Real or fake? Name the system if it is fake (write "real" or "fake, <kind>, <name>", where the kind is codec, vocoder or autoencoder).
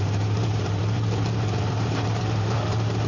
fake, vocoder, BigVGAN v2